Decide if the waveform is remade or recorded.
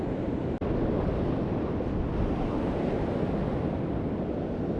recorded